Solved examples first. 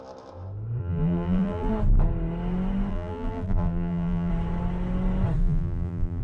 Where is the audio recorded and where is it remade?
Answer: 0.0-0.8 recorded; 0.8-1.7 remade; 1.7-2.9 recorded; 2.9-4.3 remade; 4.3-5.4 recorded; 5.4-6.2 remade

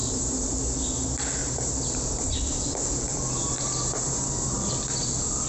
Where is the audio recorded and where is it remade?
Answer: 0.0-0.6 remade; 0.6-1.4 recorded; 1.4-2.6 remade; 2.6-5.5 recorded

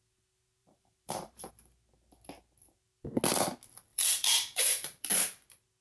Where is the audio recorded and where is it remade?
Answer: 0.0-0.6 recorded; 0.6-1.5 remade; 1.5-3.9 recorded; 3.9-5.1 remade; 5.1-5.8 recorded

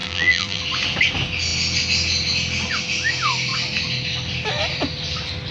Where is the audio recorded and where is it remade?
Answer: 0.0-0.6 remade; 0.6-5.5 recorded

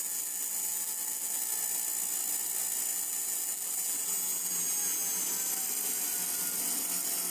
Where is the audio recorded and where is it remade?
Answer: 0.0-1.4 remade; 1.4-2.9 recorded; 2.9-5.2 remade; 5.2-7.3 recorded

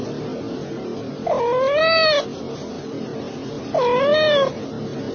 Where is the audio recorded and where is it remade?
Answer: 0.0-5.1 recorded

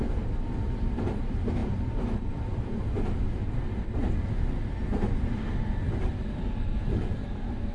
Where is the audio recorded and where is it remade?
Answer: 0.0-7.7 remade